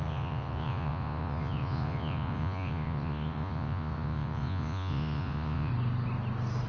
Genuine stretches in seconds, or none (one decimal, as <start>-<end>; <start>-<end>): 5.7-6.7